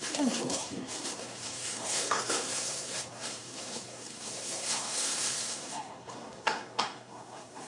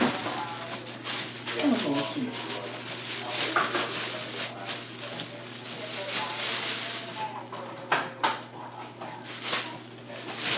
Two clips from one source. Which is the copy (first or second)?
first